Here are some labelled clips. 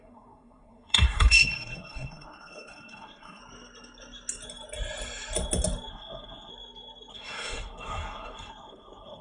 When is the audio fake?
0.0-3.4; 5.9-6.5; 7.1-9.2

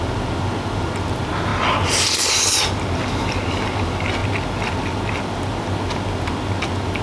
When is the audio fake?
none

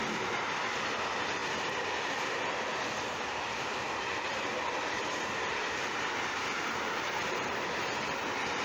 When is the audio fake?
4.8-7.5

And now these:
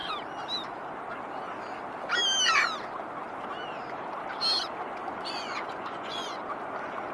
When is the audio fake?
5.0-6.4

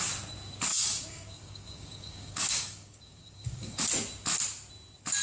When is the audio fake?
0.7-3.8

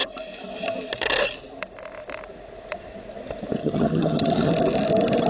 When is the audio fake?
3.6-4.5